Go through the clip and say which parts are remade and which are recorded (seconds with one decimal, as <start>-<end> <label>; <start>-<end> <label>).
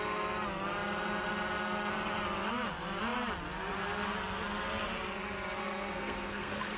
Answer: 0.0-5.6 recorded; 5.6-6.8 remade